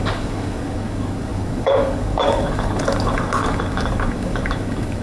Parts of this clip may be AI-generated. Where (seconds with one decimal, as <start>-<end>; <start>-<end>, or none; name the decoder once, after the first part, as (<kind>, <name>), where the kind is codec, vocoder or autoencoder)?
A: 0.0-5.0 (codec, DAC)